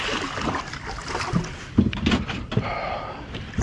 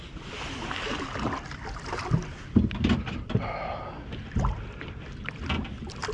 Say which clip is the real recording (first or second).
second